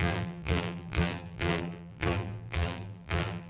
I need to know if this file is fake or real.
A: fake